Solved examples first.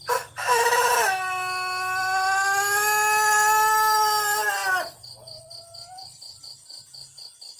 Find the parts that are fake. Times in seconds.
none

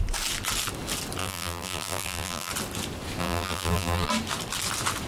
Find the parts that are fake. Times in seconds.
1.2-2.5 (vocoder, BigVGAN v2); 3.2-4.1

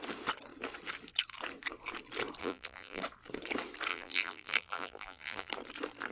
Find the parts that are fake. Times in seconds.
2.4-3.0 (vocoder, BigVGAN v2); 3.9-5.5